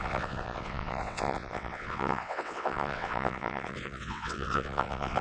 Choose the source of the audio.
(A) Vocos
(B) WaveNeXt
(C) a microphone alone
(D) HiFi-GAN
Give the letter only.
B